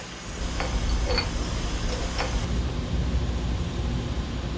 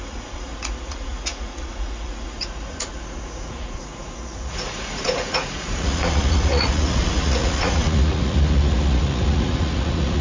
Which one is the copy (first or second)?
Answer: second